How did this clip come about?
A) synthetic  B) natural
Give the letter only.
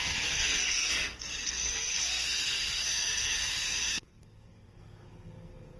A